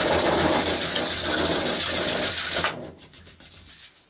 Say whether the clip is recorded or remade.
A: recorded